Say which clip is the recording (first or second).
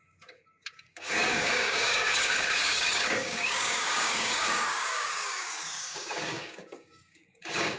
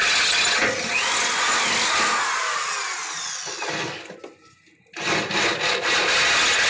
second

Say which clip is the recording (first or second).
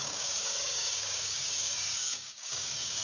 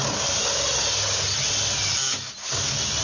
second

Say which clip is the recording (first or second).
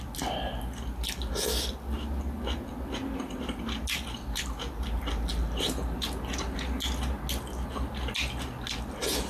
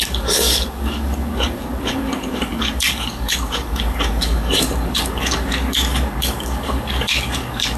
first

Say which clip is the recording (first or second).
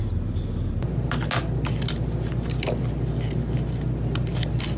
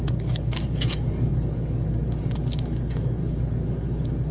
first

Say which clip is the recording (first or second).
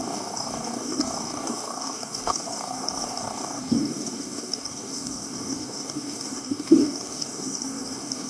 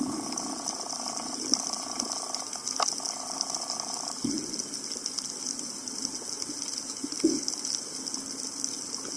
second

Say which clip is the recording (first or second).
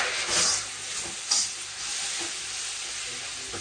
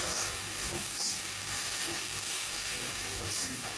first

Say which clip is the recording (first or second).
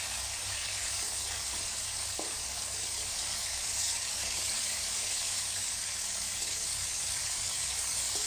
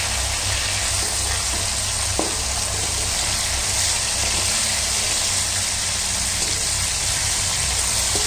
second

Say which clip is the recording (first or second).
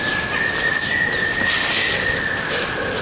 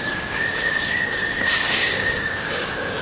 first